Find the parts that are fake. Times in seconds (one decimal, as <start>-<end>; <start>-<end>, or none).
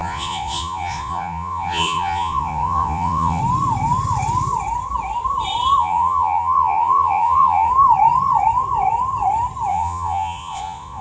0.0-3.4; 5.8-7.7; 9.7-11.0